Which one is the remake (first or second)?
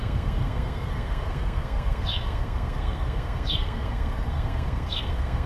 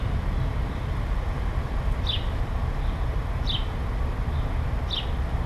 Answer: first